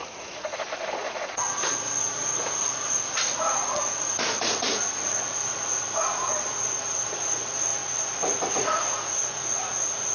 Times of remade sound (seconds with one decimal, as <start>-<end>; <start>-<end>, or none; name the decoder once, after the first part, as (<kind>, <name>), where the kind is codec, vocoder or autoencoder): 0.0-10.1 (vocoder, Vocos)